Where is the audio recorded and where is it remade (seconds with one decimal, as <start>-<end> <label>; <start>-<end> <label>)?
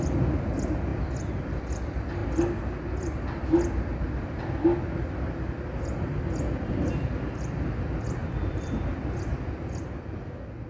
0.0-8.2 recorded; 8.2-9.3 remade; 9.3-10.7 recorded